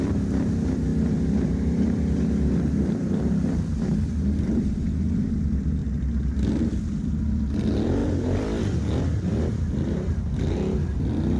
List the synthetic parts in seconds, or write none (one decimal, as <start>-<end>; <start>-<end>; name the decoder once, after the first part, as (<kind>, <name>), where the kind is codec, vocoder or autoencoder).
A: 0.9-4.6 (vocoder, BigVGAN v2); 8.0-10.2